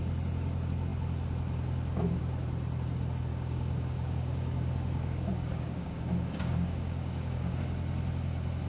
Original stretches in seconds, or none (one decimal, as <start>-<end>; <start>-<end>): 0.0-3.3; 7.6-8.7